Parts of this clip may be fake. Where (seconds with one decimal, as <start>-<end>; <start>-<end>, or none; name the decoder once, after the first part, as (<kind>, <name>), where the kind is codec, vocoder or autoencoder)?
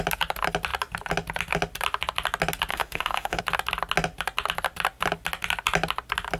2.7-3.4 (autoencoder, DAC-VAE)